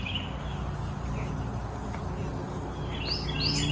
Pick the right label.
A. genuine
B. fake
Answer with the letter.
A